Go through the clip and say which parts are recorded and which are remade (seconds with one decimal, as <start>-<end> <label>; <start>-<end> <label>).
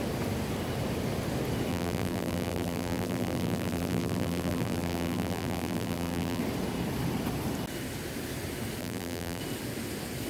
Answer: 0.0-1.7 recorded; 1.7-6.4 remade; 6.4-8.8 recorded; 8.8-9.4 remade; 9.4-10.3 recorded